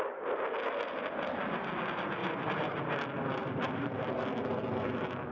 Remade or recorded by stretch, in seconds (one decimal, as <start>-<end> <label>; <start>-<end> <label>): 0.0-2.2 recorded; 2.2-2.8 remade; 2.8-3.4 recorded; 3.4-4.2 remade; 4.2-5.3 recorded